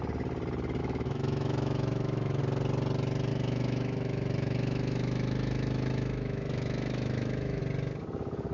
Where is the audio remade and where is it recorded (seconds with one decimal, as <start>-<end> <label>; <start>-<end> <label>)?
0.0-0.8 recorded; 0.8-2.4 remade; 2.4-3.3 recorded; 3.3-7.6 remade; 7.6-8.5 recorded